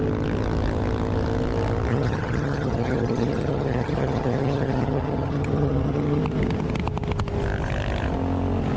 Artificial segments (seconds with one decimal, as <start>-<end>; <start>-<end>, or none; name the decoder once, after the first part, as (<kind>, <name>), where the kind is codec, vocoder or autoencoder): 1.9-6.2 (vocoder, HiFi-GAN)

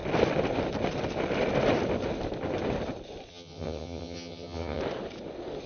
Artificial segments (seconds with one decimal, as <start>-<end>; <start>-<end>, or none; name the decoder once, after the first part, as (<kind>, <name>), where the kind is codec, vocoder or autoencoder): 3.3-4.8 (vocoder, HiFi-GAN)

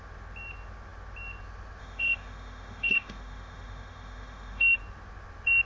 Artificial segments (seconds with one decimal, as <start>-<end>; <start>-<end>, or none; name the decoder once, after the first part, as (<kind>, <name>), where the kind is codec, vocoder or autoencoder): 1.8-4.8 (autoencoder, DAC-VAE)